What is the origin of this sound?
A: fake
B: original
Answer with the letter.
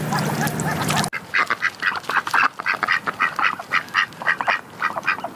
B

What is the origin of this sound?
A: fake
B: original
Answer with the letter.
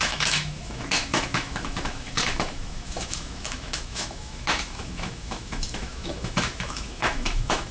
A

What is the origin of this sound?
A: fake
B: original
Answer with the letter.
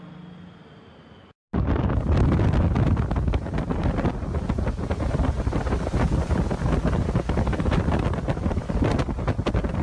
B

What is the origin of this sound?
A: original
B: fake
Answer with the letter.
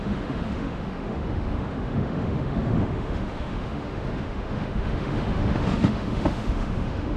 B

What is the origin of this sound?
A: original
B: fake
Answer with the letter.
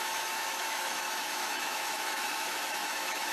B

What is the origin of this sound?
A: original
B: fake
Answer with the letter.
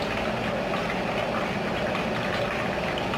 A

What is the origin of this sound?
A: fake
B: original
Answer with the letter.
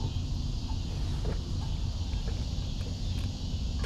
B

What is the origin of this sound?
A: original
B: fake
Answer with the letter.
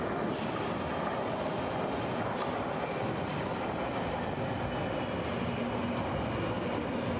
A